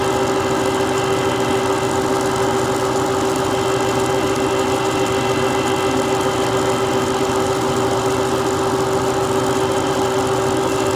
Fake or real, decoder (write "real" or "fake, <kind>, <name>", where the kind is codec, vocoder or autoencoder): real